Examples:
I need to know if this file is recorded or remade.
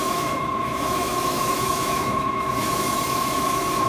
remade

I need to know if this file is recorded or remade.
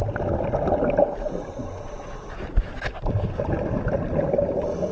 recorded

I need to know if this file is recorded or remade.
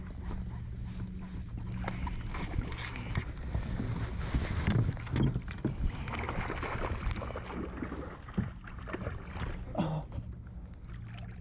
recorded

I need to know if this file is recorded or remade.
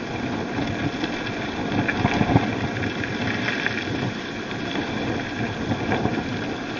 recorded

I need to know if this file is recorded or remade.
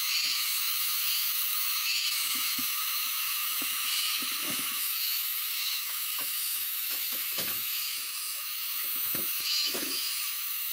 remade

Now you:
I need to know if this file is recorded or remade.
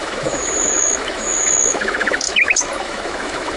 remade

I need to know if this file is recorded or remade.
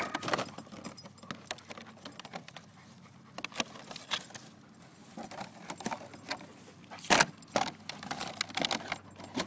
recorded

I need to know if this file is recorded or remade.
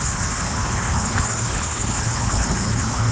remade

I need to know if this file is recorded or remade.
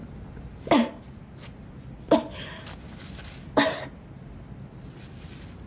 recorded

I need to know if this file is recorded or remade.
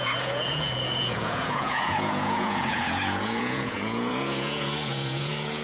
remade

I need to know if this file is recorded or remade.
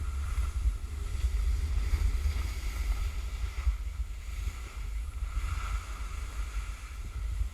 recorded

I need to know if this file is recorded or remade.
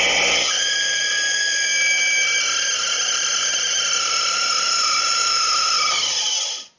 recorded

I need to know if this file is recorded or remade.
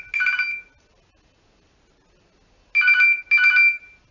recorded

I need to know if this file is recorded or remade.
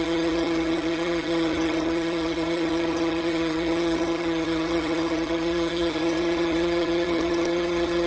remade